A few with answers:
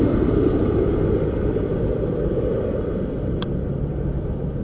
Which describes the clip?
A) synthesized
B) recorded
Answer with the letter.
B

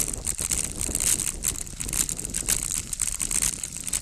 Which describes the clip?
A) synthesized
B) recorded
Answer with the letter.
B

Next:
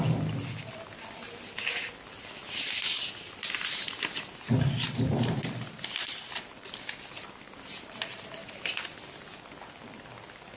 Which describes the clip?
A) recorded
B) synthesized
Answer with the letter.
A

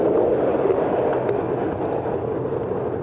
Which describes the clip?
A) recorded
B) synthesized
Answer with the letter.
A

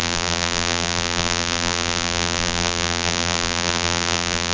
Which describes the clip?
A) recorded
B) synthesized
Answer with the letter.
B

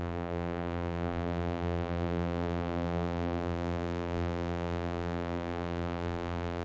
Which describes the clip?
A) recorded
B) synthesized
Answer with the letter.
B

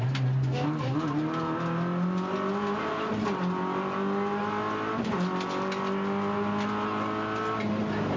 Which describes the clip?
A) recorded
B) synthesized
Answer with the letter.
A